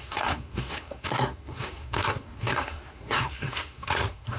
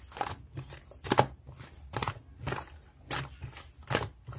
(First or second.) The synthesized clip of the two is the first